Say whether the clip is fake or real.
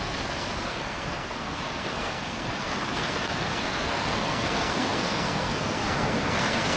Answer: fake